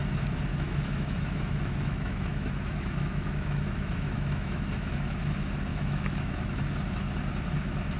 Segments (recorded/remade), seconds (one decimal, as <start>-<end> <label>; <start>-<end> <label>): 0.0-0.5 recorded; 0.5-5.1 remade; 5.1-5.7 recorded; 5.7-6.6 remade; 6.6-8.0 recorded